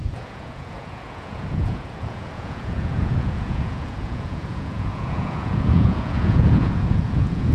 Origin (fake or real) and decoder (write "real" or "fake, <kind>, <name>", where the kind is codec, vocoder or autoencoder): fake, vocoder, Vocos